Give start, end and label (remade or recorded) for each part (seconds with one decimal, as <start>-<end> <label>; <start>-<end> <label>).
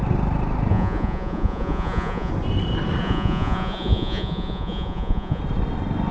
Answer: 0.0-0.7 recorded; 0.7-2.3 remade; 2.3-3.0 recorded; 3.0-5.4 remade; 5.4-6.1 recorded